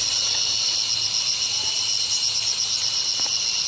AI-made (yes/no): no